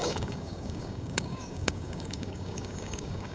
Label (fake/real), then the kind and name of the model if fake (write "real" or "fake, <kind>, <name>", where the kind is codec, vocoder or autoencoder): fake, codec, DAC